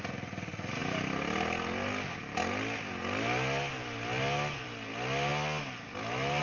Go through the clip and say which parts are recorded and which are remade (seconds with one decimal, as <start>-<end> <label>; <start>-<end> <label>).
0.0-6.4 recorded